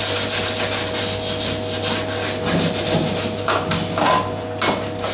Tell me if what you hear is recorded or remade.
recorded